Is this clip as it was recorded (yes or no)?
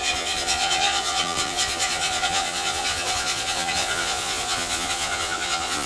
no